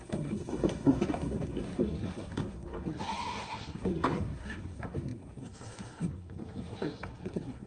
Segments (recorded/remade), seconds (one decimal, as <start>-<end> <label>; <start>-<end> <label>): 0.0-7.7 remade